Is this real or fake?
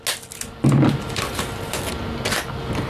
real